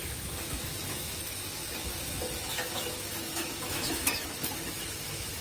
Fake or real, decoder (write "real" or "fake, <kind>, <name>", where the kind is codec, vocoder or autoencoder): fake, autoencoder, DAC-VAE